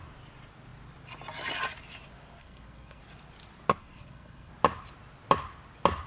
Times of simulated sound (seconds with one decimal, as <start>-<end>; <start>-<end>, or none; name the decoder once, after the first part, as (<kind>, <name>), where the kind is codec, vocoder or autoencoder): 2.4-3.0 (codec, SNAC); 3.8-4.5